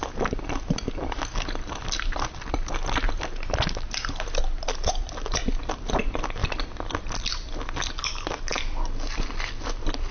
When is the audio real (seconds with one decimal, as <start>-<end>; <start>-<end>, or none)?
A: 0.0-10.1